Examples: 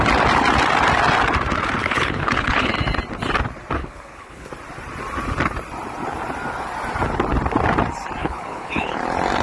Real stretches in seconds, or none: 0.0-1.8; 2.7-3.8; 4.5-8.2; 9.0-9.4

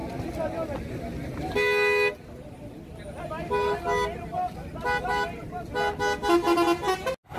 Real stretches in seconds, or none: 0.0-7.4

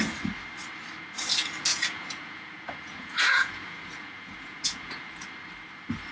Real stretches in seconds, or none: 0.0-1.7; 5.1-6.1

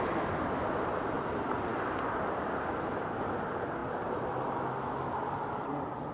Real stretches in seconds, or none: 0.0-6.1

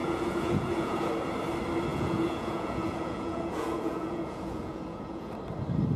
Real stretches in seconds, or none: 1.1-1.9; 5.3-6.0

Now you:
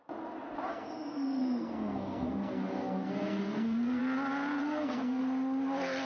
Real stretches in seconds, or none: 0.0-0.7; 4.0-4.6; 5.2-6.0

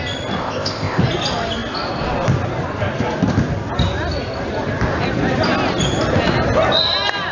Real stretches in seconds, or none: 0.0-0.4; 1.0-7.3